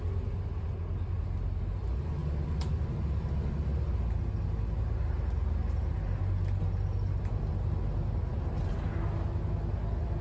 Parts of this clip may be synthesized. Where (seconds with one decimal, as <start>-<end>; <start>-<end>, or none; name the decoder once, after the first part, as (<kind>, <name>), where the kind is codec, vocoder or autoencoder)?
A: none